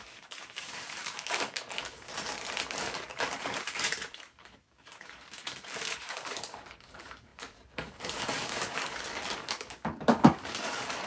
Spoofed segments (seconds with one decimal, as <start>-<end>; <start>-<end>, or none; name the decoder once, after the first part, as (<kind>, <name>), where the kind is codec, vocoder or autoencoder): 0.0-2.1 (codec, DAC); 2.7-11.1